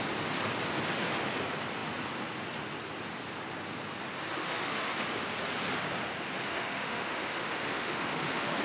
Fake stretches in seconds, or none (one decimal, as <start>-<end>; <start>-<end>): 4.4-4.9; 6.4-8.6